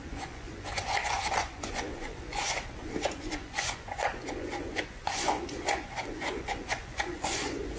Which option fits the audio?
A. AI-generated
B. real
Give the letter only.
A